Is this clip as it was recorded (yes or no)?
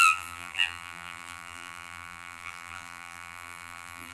no